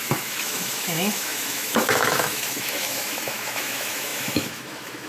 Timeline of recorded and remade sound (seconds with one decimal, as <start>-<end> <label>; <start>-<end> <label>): 0.0-5.1 remade